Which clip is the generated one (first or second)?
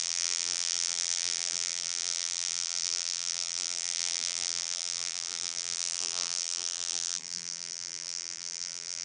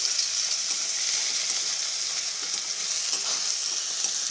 first